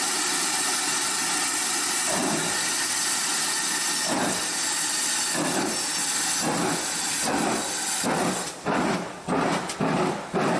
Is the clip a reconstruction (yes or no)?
no